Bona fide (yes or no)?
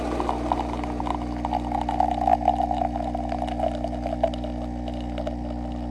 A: yes